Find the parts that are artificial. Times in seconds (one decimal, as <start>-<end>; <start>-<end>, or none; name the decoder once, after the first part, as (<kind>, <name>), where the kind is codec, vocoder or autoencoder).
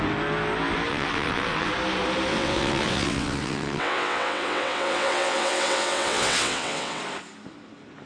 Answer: 0.9-1.7 (vocoder, WaveNeXt); 2.3-7.0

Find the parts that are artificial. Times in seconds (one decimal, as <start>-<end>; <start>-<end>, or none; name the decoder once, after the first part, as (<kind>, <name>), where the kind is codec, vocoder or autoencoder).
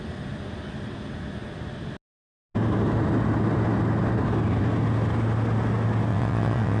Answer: 6.1-6.8 (vocoder, WaveNeXt)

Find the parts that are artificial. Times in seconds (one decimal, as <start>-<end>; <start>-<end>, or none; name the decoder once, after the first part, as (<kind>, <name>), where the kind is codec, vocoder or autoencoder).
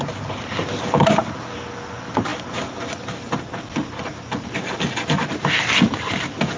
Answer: none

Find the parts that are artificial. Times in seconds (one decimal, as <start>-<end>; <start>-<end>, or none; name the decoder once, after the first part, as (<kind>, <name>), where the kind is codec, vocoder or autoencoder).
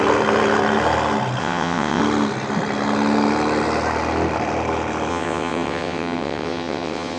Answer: 1.4-2.0 (vocoder, WaveNeXt); 5.1-7.2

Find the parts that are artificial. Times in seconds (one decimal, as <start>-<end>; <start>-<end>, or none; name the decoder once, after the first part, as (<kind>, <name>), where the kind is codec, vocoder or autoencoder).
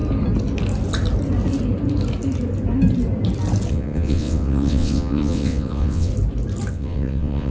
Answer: 3.7-6.1 (vocoder, WaveNeXt); 6.7-7.5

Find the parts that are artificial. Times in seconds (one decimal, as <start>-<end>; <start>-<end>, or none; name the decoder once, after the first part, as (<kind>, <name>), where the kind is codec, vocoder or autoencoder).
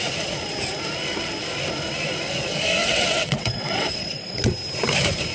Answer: 2.8-4.4 (vocoder, WaveNeXt)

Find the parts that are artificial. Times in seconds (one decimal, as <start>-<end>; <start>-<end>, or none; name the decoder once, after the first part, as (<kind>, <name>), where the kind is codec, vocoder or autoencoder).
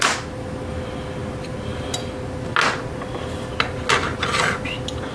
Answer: none